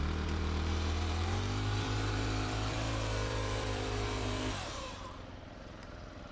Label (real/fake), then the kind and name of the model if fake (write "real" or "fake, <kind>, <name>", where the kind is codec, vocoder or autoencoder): fake, vocoder, BigVGAN v2